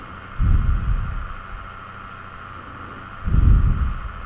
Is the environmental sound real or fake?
real